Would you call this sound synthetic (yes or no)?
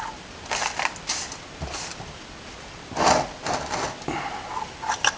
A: no